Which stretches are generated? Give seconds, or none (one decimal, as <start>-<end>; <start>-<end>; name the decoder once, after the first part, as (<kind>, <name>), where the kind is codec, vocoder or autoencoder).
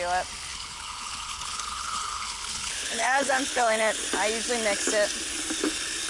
0.5-4.0 (codec, HILCodec)